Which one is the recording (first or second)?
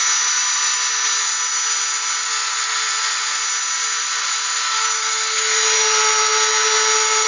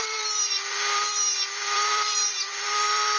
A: first